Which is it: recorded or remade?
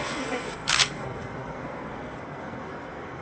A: remade